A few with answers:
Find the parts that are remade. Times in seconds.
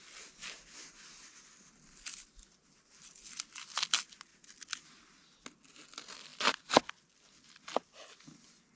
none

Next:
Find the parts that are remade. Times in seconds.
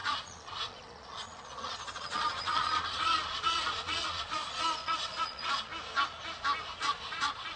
0.0-5.7; 6.8-7.6